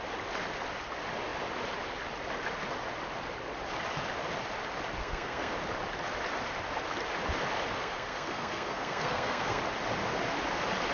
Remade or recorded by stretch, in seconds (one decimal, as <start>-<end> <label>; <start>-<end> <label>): 0.0-5.0 recorded; 5.0-5.5 remade; 5.5-7.8 recorded; 7.8-9.6 remade; 9.6-10.9 recorded